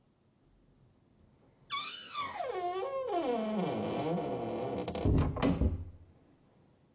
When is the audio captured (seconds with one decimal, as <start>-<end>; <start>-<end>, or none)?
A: 0.0-1.8; 2.4-6.9